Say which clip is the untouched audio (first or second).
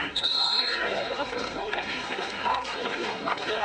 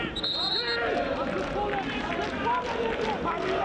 second